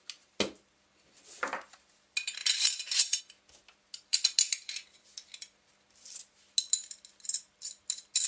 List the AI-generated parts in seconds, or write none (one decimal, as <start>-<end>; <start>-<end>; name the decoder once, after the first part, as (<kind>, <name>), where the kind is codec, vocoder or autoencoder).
2.4-3.2 (vocoder, BigVGAN v2)